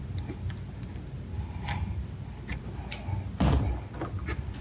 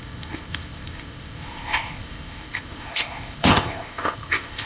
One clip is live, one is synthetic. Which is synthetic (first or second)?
second